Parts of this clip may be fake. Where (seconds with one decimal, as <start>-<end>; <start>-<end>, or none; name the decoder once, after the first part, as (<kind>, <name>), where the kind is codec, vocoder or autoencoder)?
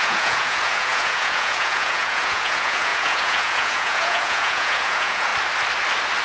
0.0-5.3 (vocoder, Vocos)